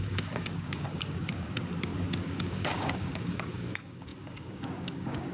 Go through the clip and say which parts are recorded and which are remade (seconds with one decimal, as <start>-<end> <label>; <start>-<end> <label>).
0.0-5.3 remade

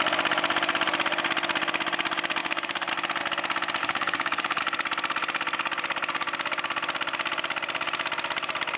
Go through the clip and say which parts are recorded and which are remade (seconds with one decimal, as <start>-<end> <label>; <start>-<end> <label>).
0.0-2.4 recorded; 2.4-2.9 remade; 2.9-3.8 recorded; 3.8-4.6 remade; 4.6-8.8 recorded

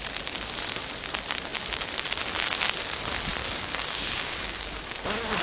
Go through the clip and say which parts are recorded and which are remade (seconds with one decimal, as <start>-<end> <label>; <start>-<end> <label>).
0.0-3.4 recorded; 3.4-4.9 remade; 4.9-5.4 recorded

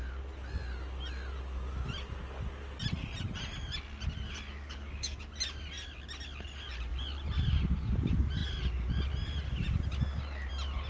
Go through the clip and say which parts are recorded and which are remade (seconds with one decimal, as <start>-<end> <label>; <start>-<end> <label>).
0.0-4.6 recorded; 4.6-5.2 remade; 5.2-10.9 recorded

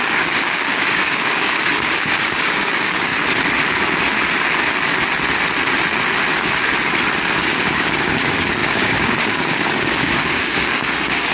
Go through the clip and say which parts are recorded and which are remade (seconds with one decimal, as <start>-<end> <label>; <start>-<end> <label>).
0.0-3.1 remade; 3.1-7.4 recorded; 7.4-11.3 remade

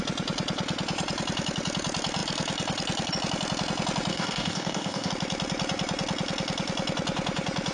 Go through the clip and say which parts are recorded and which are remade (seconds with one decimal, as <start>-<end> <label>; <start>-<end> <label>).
0.0-4.1 recorded; 4.1-5.1 remade; 5.1-7.7 recorded

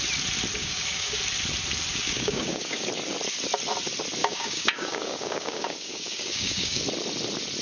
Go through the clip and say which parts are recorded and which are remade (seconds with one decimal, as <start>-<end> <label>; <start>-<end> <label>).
0.0-0.6 recorded; 0.6-1.2 remade; 1.2-1.9 recorded; 1.9-2.9 remade; 2.9-4.2 recorded; 4.2-6.8 remade; 6.8-7.6 recorded

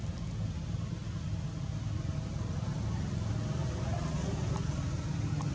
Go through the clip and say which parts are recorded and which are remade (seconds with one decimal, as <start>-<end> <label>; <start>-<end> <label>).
0.0-5.5 recorded